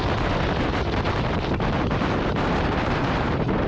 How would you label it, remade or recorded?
recorded